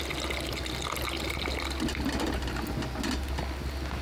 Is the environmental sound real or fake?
real